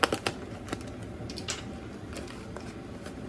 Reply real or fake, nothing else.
real